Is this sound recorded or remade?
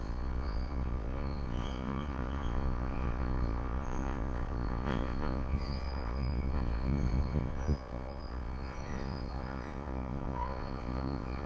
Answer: remade